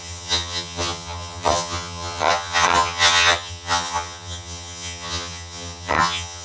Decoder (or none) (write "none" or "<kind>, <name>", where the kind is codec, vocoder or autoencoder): vocoder, HiFi-GAN